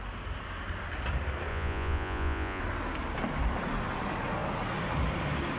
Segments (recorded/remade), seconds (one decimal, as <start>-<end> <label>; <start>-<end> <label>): 0.0-1.5 recorded; 1.5-2.6 remade; 2.6-5.6 recorded